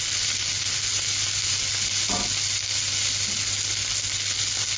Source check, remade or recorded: recorded